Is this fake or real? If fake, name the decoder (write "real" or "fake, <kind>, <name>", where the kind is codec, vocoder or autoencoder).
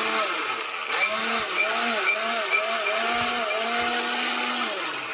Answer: real